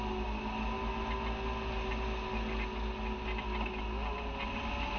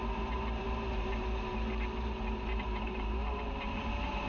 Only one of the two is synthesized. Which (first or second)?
second